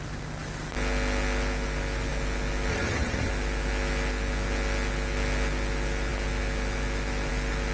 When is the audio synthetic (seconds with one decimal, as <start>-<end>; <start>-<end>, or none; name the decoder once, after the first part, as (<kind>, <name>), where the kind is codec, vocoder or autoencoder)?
2.7-3.3 (vocoder, HiFi-GAN)